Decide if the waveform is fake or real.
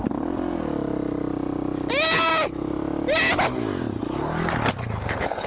real